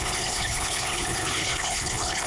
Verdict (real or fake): fake